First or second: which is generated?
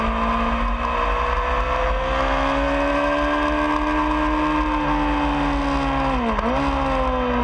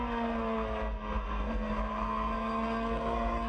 second